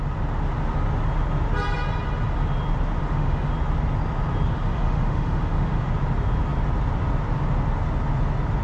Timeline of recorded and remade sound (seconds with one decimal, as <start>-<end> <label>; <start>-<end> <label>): 0.0-3.0 recorded; 3.0-3.5 remade; 3.5-4.5 recorded; 4.5-5.9 remade; 5.9-8.6 recorded